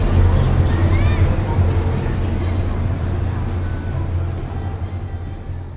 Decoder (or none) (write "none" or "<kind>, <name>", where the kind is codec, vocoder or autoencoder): none